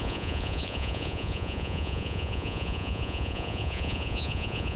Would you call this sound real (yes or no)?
no